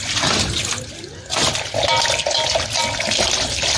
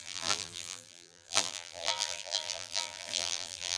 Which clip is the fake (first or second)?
second